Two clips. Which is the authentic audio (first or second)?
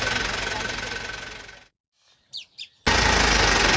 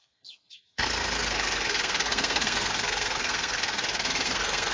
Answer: first